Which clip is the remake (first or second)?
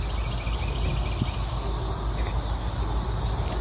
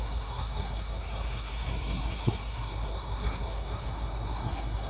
second